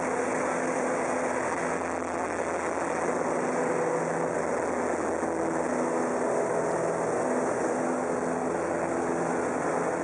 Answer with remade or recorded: recorded